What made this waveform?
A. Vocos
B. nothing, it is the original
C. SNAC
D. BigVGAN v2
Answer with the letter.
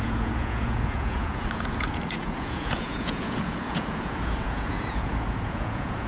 A